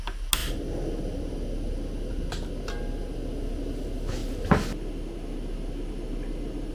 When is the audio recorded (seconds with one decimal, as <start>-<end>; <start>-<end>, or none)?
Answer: 0.0-6.7